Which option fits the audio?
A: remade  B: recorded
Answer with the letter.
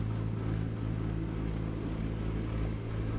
B